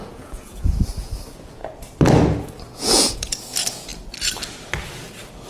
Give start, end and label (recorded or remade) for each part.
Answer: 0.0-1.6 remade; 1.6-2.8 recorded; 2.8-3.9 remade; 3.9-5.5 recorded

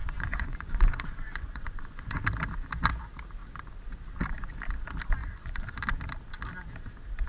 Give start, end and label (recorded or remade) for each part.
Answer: 0.0-2.2 remade; 2.2-5.2 recorded; 5.2-5.7 remade; 5.7-7.3 recorded

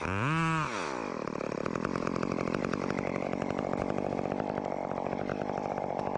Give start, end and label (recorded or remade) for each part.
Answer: 0.0-6.2 recorded

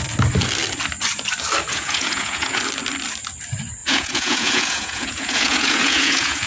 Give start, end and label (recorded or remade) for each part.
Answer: 0.0-1.7 recorded; 1.7-2.6 remade; 2.6-3.8 recorded; 3.8-6.5 remade

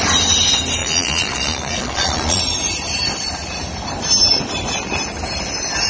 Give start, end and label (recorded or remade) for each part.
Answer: 0.0-0.8 recorded; 0.8-2.4 remade; 2.4-5.9 recorded

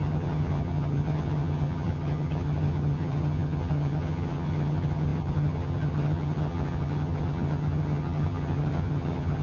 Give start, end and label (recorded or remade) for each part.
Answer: 0.0-9.4 remade